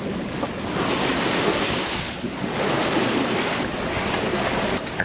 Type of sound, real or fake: real